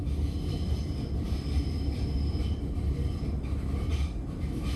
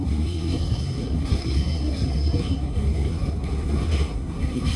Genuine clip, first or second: first